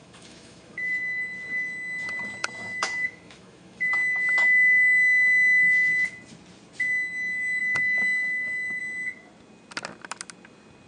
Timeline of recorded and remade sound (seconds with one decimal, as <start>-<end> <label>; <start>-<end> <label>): 0.0-0.9 remade; 0.9-2.4 recorded; 2.4-3.9 remade; 3.9-7.6 recorded; 7.6-8.8 remade; 8.8-10.9 recorded